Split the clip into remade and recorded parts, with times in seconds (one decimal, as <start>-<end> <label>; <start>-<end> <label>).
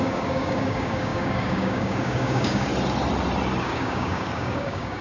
0.0-2.7 remade; 2.7-3.6 recorded; 3.6-5.0 remade